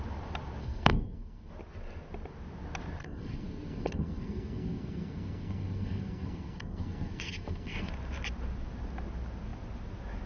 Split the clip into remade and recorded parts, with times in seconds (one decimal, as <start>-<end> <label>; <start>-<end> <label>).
0.0-0.6 recorded; 0.6-1.5 remade; 1.5-3.0 recorded; 3.0-7.9 remade; 7.9-10.3 recorded